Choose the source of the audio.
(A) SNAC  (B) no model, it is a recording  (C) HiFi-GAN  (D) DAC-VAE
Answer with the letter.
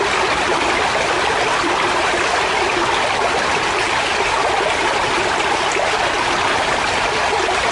B